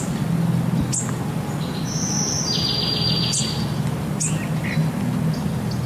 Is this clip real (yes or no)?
yes